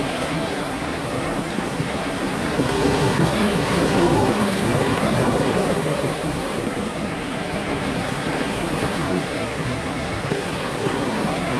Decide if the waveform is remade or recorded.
remade